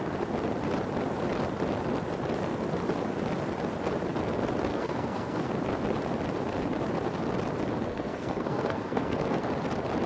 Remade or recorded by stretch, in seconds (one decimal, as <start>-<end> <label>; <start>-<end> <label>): 0.0-4.7 recorded; 4.7-5.5 remade; 5.5-7.9 recorded; 7.9-9.5 remade; 9.5-10.1 recorded